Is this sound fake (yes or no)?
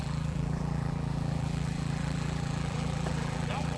yes